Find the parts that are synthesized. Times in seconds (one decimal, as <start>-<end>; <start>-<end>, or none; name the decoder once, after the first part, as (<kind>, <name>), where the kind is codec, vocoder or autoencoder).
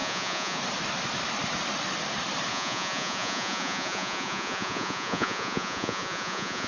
0.0-0.6 (vocoder, Vocos); 2.5-6.7